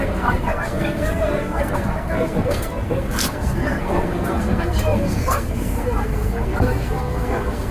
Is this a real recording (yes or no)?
no